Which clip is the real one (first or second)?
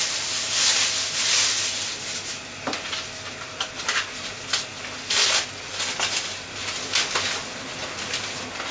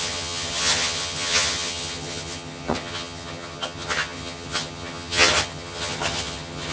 first